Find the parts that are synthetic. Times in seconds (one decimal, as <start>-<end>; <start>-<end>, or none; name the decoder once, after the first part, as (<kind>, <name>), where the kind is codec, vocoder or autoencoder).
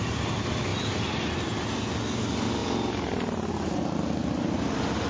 none